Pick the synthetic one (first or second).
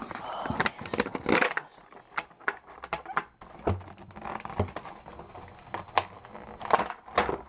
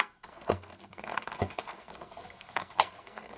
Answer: second